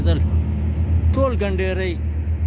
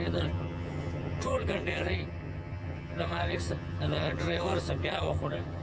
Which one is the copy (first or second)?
second